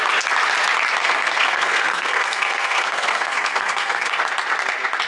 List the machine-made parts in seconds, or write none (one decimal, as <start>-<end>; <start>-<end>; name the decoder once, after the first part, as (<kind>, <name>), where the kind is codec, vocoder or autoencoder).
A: 1.0-4.1 (codec, SNAC)